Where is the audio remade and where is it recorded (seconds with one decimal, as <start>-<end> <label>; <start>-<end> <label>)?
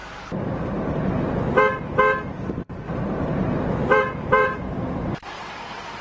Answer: 0.0-3.8 recorded; 3.8-4.7 remade; 4.7-6.0 recorded